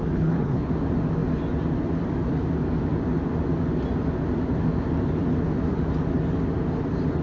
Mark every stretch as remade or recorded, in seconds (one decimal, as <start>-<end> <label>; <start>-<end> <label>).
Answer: 0.0-0.7 remade; 0.7-7.2 recorded